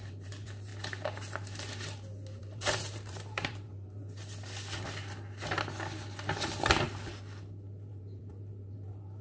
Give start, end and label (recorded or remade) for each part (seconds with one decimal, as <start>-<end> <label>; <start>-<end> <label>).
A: 0.0-0.7 remade; 0.7-2.4 recorded; 2.4-4.0 remade; 4.0-7.9 recorded; 7.9-9.2 remade

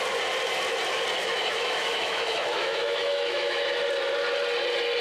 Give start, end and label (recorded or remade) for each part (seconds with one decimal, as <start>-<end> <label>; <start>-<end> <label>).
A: 0.0-1.2 recorded; 1.2-3.7 remade; 3.7-5.0 recorded